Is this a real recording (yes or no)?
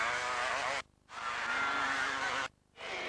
yes